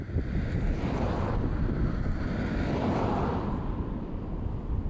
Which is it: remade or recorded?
recorded